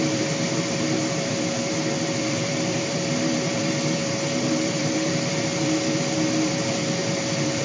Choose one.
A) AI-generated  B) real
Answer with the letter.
A